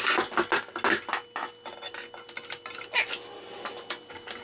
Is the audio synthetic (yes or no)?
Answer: no